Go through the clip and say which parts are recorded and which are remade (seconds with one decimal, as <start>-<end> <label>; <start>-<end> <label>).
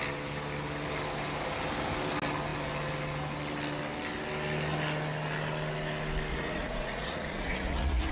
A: 0.0-6.3 recorded; 6.3-8.1 remade